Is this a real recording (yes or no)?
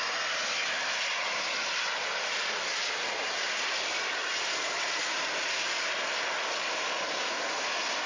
yes